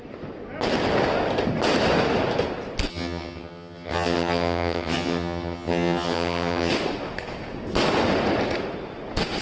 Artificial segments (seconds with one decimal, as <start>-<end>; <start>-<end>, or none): 2.9-6.7